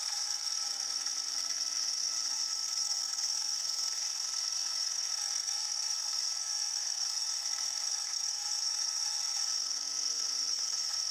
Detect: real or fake fake